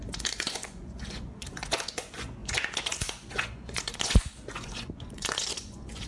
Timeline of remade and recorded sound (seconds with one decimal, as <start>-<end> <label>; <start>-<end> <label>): 0.0-6.1 remade